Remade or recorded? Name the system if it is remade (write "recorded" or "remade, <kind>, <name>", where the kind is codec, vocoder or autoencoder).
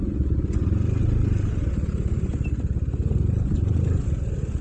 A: recorded